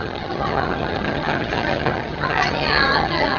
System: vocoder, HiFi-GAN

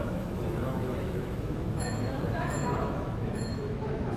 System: autoencoder, DAC-VAE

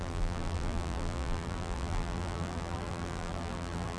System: vocoder, BigVGAN v2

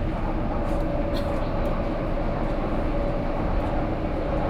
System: none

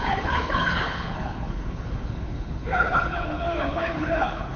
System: codec, HILCodec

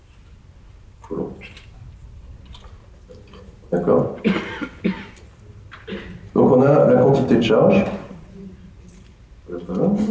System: none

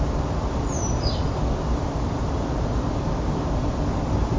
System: none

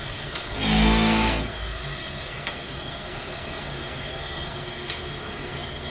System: codec, SNAC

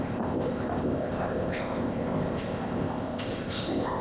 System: codec, ZipCodec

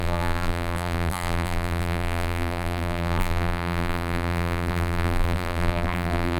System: vocoder, BigVGAN v2